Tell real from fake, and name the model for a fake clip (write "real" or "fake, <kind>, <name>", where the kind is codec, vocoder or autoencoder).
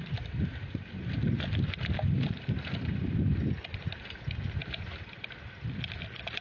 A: real